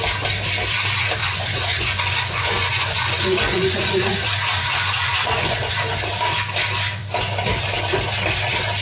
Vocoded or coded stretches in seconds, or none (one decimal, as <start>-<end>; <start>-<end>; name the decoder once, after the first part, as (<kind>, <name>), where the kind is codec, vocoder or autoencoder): 1.2-4.1 (vocoder, Vocos); 4.6-5.7